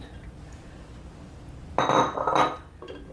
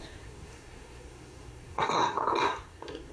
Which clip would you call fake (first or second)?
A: second